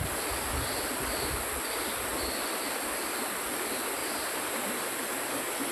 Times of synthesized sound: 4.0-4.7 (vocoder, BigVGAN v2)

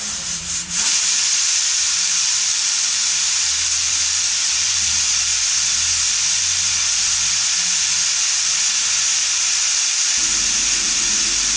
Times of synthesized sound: 0.0-5.3 (vocoder, BigVGAN v2); 9.3-11.6

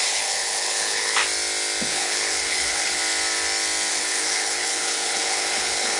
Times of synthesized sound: 0.0-1.2 (codec, HILCodec); 1.9-3.0; 3.9-6.0